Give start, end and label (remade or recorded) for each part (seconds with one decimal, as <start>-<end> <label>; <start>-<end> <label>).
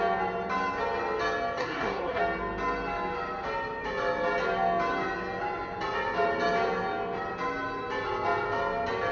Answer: 0.0-1.6 recorded; 1.6-2.2 remade; 2.2-9.1 recorded